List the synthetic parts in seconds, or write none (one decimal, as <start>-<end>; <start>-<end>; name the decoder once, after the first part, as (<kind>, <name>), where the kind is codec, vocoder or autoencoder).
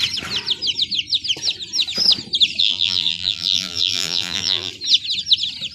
2.6-4.7 (vocoder, BigVGAN v2)